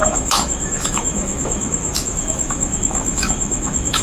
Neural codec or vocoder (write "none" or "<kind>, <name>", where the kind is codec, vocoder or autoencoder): autoencoder, DAC-VAE